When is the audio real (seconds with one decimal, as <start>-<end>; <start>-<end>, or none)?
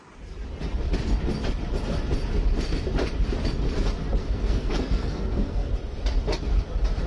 0.0-4.2; 5.7-7.1